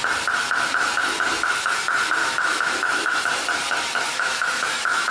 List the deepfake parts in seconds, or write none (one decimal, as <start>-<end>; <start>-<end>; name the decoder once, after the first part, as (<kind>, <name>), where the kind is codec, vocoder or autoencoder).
2.2-3.2 (autoencoder, DAC-VAE); 4.1-5.1